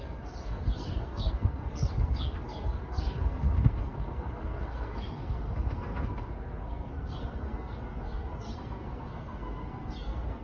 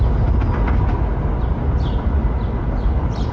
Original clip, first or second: second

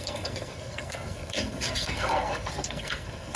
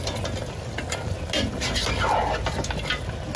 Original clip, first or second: second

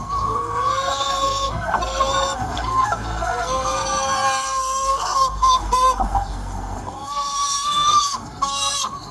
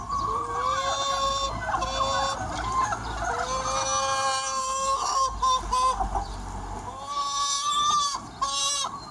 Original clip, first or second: second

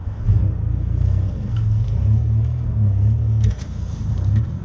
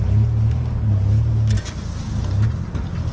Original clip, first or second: second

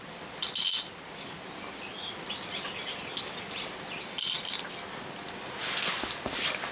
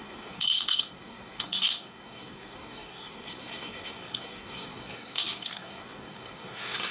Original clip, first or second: first